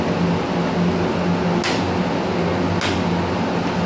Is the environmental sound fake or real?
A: real